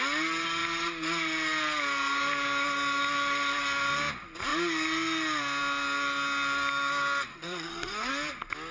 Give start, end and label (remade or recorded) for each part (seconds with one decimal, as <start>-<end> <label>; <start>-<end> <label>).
0.0-7.3 recorded; 7.3-8.1 remade; 8.1-8.7 recorded